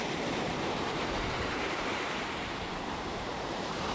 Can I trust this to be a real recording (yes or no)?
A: no